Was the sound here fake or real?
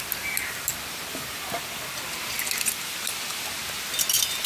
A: real